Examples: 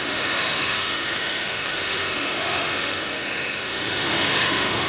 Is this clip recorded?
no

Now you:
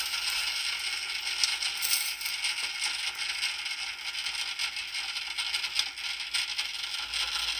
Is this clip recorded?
yes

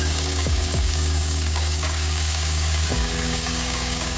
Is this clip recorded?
no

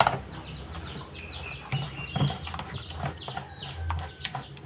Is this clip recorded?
yes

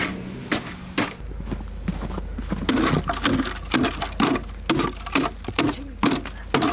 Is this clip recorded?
yes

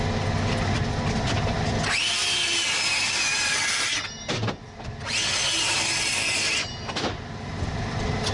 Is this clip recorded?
yes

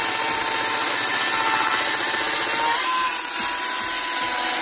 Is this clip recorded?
yes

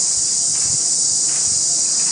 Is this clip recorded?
yes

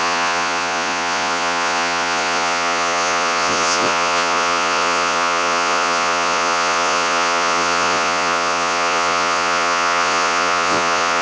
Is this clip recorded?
no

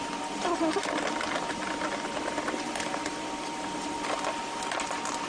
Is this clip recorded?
yes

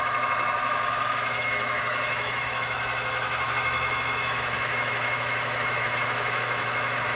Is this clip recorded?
no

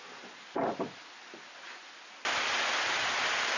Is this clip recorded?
yes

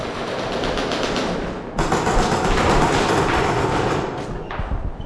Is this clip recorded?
yes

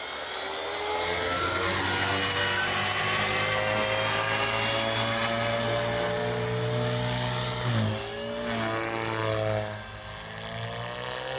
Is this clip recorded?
yes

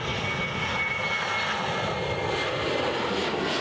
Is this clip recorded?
yes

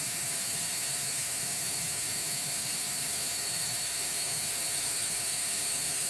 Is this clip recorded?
no